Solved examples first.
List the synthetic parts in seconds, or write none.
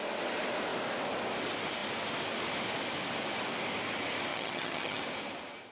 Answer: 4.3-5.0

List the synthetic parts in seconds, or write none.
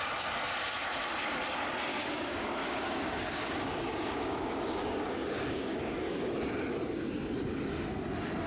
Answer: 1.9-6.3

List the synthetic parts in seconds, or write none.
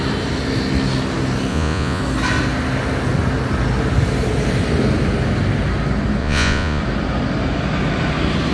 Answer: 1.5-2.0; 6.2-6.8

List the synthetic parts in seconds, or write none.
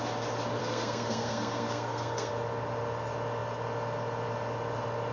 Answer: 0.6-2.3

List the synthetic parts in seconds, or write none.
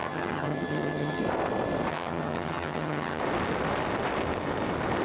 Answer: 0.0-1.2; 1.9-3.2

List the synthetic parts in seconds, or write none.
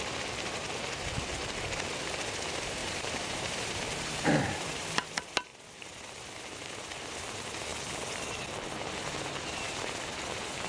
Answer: 2.8-5.0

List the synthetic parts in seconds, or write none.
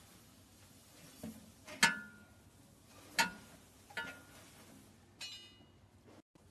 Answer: none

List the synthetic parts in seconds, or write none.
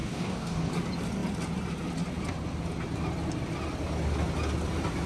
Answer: 0.0-0.7